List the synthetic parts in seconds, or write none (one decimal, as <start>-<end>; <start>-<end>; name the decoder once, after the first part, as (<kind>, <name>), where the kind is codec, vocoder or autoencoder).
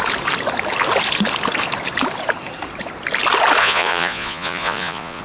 3.6-5.2 (vocoder, Vocos)